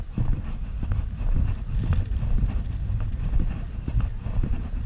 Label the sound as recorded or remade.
recorded